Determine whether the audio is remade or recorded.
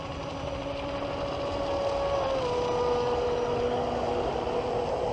recorded